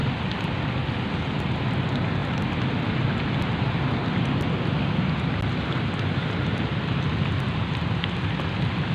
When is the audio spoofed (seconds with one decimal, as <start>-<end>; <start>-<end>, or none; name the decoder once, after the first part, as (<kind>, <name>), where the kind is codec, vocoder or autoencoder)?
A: none